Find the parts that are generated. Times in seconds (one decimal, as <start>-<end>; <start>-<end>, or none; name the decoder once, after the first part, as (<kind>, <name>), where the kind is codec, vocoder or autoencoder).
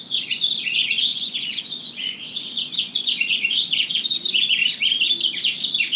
0.0-4.6 (vocoder, Vocos)